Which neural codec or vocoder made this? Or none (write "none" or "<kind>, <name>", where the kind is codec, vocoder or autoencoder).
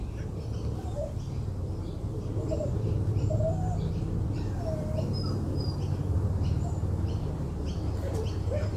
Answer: none